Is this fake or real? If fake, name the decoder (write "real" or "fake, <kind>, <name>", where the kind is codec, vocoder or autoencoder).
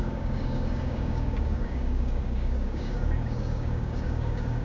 fake, codec, DAC